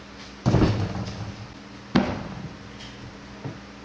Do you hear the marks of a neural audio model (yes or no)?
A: no